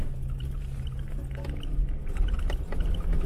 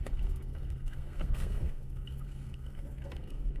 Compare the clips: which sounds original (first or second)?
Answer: first